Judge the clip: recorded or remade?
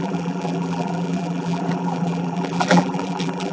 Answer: remade